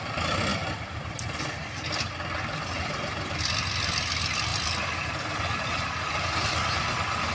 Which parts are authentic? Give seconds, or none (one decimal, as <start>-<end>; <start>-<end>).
0.0-7.3